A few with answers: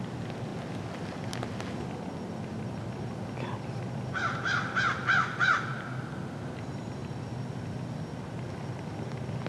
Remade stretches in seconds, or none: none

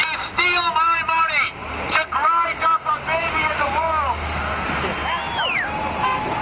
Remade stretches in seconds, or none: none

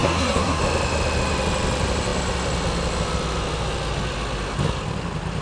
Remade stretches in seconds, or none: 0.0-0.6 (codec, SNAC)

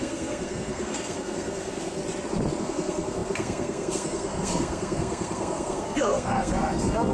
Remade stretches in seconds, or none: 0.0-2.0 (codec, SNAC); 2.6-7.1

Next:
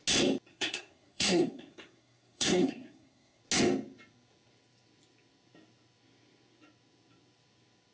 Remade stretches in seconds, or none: 0.5-3.4 (codec, SNAC)